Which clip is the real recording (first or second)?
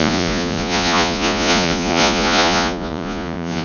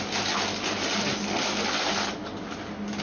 second